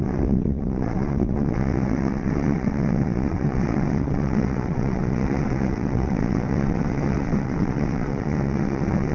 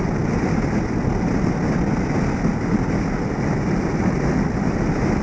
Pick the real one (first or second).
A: second